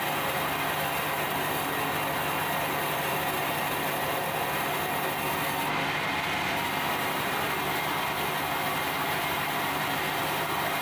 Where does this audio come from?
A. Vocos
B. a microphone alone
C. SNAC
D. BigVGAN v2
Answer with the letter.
B